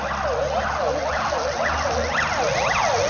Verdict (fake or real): real